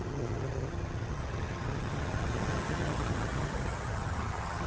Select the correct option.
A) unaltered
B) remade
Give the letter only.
B